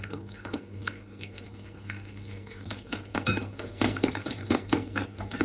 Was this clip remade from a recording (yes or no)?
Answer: yes